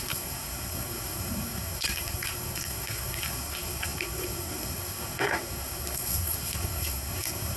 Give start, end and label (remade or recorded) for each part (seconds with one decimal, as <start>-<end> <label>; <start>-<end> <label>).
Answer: 0.0-7.6 remade